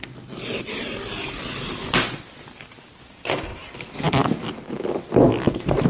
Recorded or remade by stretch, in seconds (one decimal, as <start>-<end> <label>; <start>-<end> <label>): 0.0-3.5 recorded; 3.5-4.4 remade; 4.4-5.9 recorded